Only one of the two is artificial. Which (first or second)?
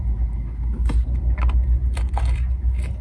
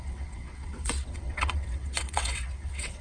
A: second